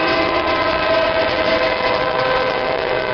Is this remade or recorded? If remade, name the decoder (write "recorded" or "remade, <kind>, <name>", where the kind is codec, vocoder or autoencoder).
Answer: remade, vocoder, WaveNeXt